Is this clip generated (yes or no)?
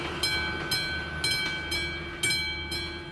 no